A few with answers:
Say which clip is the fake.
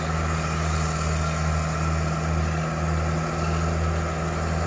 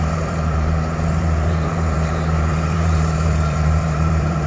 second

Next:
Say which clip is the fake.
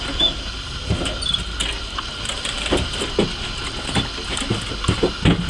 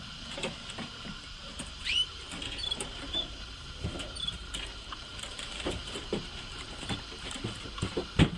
second